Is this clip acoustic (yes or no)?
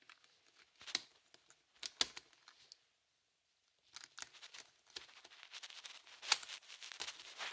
yes